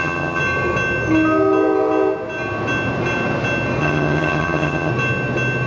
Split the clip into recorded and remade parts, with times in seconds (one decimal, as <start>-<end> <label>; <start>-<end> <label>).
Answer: 0.0-0.4 remade; 0.4-3.8 recorded; 3.8-4.9 remade; 4.9-5.7 recorded